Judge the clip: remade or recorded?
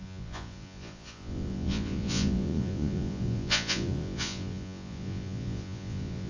remade